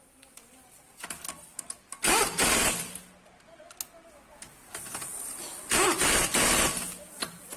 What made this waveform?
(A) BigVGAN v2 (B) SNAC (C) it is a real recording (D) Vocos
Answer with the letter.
C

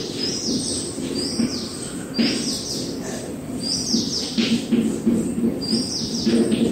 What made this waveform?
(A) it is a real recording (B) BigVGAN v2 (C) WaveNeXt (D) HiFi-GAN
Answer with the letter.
A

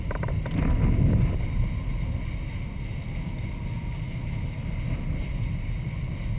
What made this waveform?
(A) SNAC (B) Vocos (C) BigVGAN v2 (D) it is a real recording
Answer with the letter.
D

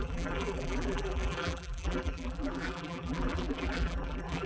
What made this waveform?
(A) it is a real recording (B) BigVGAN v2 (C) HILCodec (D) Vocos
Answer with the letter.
B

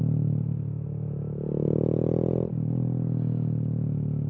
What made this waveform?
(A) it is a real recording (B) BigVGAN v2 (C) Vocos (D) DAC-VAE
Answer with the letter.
A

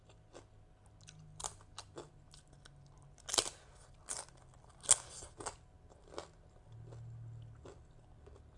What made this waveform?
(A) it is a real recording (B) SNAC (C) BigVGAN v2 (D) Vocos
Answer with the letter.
A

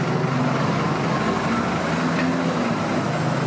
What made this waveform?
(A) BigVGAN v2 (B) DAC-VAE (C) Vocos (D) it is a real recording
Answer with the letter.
D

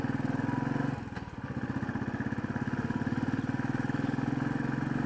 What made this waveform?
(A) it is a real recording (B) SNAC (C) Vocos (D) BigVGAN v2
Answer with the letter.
A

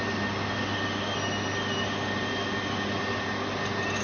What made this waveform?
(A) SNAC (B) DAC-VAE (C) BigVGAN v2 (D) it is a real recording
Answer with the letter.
D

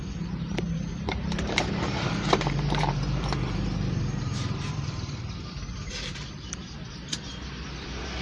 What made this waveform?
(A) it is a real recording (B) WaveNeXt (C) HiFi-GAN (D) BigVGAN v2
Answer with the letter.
D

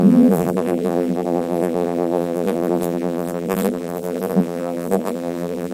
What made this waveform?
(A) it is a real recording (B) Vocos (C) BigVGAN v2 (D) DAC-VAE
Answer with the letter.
C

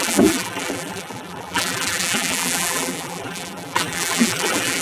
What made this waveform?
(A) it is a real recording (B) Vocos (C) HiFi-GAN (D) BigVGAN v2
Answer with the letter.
D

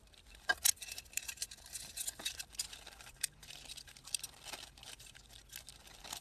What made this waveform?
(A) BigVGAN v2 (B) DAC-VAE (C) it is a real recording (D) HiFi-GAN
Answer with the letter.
C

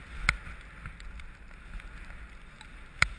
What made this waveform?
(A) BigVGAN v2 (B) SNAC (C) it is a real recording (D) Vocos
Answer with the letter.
C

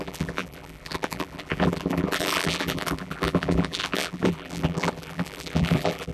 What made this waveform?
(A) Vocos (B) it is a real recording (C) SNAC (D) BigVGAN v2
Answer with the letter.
D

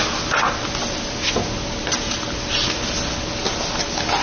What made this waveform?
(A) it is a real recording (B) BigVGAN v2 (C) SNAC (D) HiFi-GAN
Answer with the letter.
A